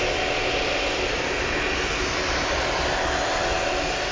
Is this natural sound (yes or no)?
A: yes